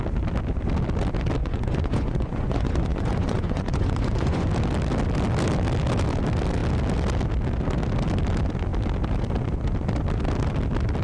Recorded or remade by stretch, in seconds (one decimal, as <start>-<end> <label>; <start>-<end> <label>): 0.0-1.4 recorded; 1.4-4.5 remade; 4.5-11.0 recorded